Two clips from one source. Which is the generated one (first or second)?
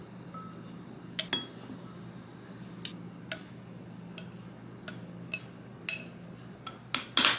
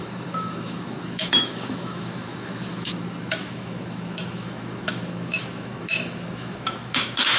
second